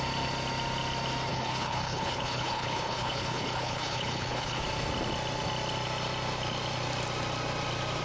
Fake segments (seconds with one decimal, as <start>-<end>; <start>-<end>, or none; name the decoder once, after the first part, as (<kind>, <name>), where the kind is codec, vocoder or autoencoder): 1.3-4.6 (codec, HILCodec)